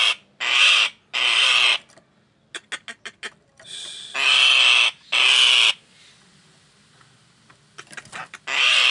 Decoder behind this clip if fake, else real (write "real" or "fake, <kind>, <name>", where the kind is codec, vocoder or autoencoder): real